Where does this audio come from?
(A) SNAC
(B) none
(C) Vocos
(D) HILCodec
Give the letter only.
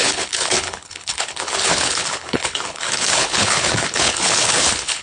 D